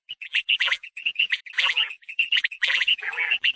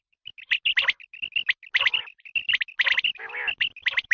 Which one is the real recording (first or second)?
second